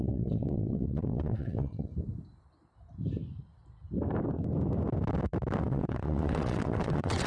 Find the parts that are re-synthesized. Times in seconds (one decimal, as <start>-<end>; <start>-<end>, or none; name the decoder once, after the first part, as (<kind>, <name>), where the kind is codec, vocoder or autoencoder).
0.0-1.9 (vocoder, WaveNeXt); 5.6-7.3